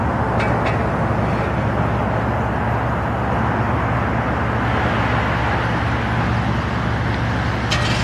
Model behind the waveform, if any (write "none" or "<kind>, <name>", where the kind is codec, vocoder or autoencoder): none